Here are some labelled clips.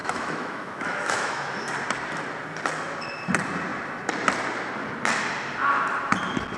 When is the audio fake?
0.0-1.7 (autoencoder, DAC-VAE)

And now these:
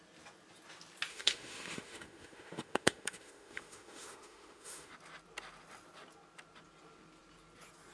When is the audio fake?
1.1-4.9 (autoencoder, DAC-VAE)

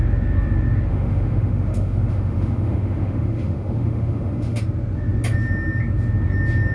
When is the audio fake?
0.9-4.6 (autoencoder, DAC-VAE)

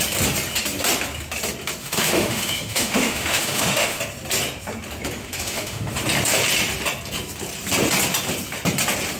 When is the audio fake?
1.8-4.0 (autoencoder, DAC-VAE); 5.2-5.9

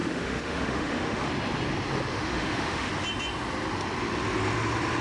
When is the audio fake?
0.0-1.3 (autoencoder, DAC-VAE); 2.1-2.9